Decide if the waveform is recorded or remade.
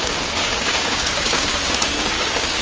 remade